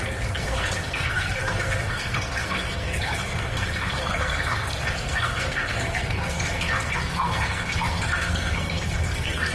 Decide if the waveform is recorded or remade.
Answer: remade